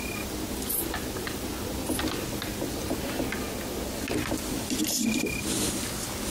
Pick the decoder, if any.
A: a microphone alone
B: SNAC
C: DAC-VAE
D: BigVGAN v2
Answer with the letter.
A